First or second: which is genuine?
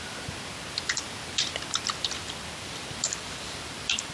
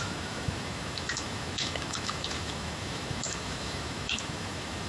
first